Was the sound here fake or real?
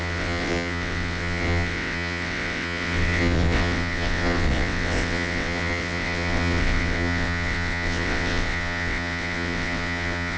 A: fake